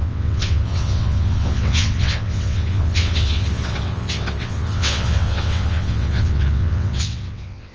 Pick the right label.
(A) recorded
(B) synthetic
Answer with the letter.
B